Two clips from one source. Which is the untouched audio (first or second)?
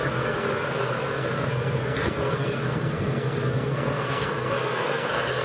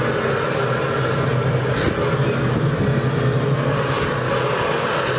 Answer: second